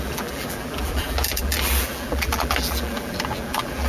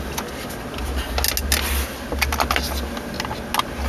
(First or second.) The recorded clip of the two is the second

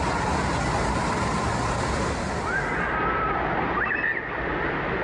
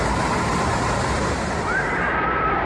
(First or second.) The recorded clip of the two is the first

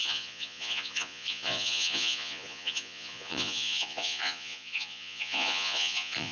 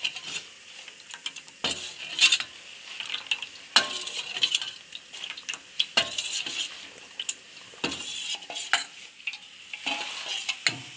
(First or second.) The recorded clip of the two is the second